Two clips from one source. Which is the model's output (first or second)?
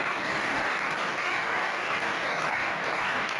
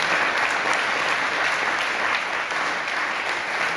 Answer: first